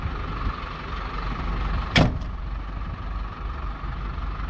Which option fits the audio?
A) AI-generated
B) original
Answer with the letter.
B